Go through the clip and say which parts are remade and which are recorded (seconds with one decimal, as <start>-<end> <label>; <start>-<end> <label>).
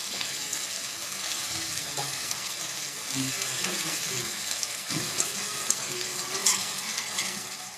0.0-7.8 remade